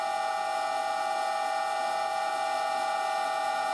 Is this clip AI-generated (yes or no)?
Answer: no